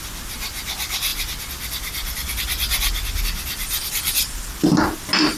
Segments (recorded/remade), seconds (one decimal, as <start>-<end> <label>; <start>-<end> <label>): 0.0-5.4 recorded